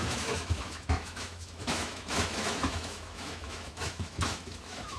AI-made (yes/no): yes